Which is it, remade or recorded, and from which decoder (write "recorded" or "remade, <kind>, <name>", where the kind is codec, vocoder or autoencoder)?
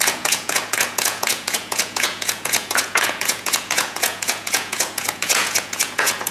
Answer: remade, vocoder, Vocos